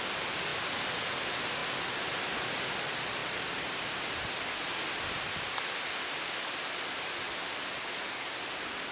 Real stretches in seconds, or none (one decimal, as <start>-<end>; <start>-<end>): 0.0-0.5; 1.0-3.2; 4.0-8.9